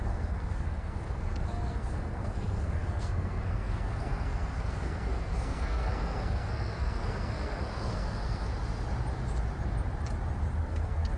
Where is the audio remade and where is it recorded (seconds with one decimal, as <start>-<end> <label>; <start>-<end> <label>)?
0.0-8.5 remade; 8.5-10.6 recorded; 10.6-11.2 remade

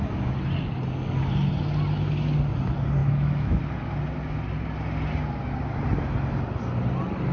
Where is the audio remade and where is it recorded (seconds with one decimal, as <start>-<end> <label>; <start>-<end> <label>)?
0.0-3.0 recorded; 3.0-3.6 remade; 3.6-7.3 recorded

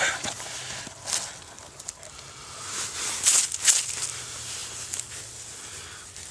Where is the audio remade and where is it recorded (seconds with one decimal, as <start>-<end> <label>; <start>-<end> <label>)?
0.0-6.3 recorded

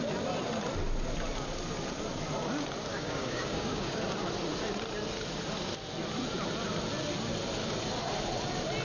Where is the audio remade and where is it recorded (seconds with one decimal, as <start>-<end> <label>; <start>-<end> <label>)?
0.0-2.9 recorded; 2.9-4.0 remade; 4.0-8.8 recorded

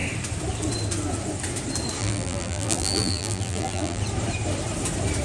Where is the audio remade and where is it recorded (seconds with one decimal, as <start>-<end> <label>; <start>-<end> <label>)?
0.0-2.0 recorded; 2.0-4.0 remade; 4.0-5.2 recorded

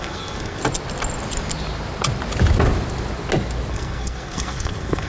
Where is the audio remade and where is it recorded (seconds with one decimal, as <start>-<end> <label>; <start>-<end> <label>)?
0.0-0.6 remade; 0.6-3.7 recorded; 3.7-5.1 remade

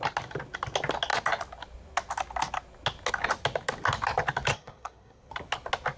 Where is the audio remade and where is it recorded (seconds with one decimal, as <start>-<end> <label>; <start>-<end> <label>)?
0.0-4.5 recorded; 4.5-5.3 remade; 5.3-6.0 recorded